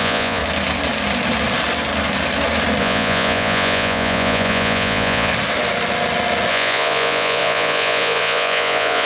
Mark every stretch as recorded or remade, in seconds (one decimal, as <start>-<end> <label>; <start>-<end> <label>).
0.0-0.4 remade; 0.4-2.8 recorded; 2.8-5.3 remade; 5.3-6.5 recorded; 6.5-9.1 remade